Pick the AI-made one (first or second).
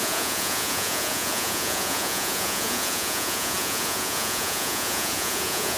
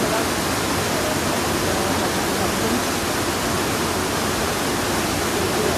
first